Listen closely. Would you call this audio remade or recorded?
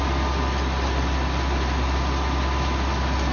recorded